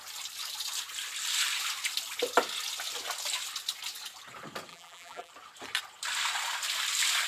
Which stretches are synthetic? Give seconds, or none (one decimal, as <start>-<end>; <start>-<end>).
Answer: 4.7-5.3